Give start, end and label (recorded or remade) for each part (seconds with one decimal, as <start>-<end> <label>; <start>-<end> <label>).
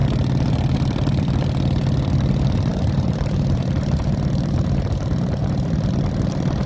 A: 0.0-2.7 recorded; 2.7-5.9 remade; 5.9-6.7 recorded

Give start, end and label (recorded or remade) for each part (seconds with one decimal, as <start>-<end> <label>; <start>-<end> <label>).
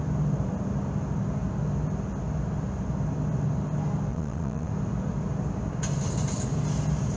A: 0.0-4.1 recorded; 4.1-4.7 remade; 4.7-7.2 recorded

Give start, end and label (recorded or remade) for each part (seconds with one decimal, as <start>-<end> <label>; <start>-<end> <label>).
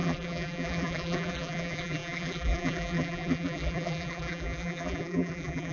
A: 0.0-5.7 remade